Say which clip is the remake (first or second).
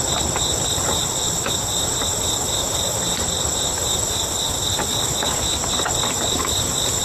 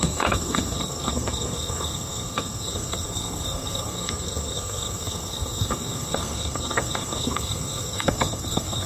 second